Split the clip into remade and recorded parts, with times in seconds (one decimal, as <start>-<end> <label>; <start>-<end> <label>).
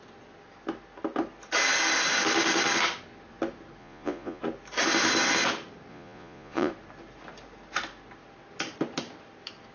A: 0.0-3.8 recorded; 3.8-4.4 remade; 4.4-5.9 recorded; 5.9-6.7 remade; 6.7-9.7 recorded